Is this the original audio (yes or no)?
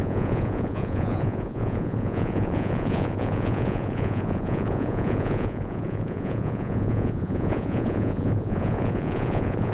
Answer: no